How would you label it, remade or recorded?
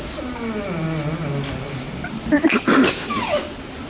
recorded